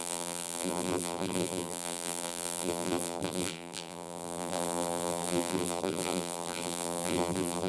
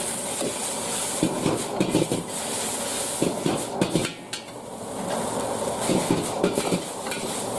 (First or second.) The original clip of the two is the second